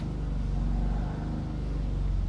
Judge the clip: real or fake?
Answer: real